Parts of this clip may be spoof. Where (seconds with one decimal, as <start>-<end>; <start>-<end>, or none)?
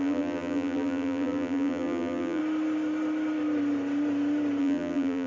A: 0.0-2.4; 4.6-5.3